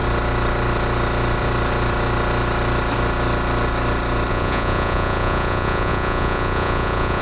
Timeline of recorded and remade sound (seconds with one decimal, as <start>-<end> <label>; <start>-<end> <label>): 0.0-4.3 recorded; 4.3-7.2 remade

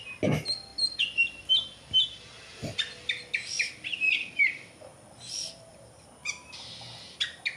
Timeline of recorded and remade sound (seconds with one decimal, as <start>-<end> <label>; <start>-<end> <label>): 0.0-7.6 recorded

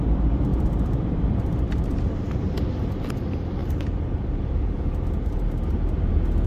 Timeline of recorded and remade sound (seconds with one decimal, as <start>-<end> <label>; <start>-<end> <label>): 0.0-0.5 recorded; 0.5-3.1 remade; 3.1-3.6 recorded; 3.6-6.1 remade; 6.1-6.5 recorded

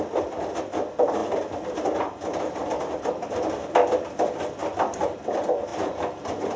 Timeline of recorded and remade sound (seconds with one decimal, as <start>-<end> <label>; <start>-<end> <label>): 0.0-6.6 recorded

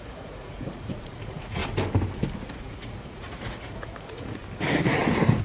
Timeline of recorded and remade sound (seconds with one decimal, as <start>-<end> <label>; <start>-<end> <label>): 0.0-1.6 remade; 1.6-2.5 recorded; 2.5-4.4 remade; 4.4-5.4 recorded

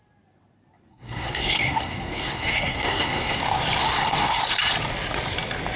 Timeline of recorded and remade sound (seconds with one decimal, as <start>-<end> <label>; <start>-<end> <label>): 0.0-0.9 recorded; 0.9-3.4 remade; 3.4-3.8 recorded; 3.8-4.4 remade; 4.4-5.8 recorded